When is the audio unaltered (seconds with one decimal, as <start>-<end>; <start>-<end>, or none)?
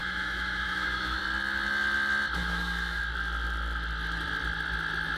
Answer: 1.2-2.4; 3.0-5.2